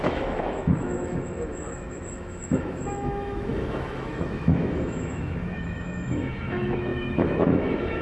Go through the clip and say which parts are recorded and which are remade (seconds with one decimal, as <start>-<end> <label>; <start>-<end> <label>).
0.0-8.0 remade